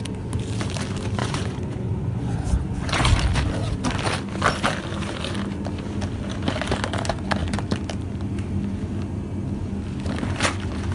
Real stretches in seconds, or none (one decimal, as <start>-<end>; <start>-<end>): 0.0-1.2; 3.1-10.9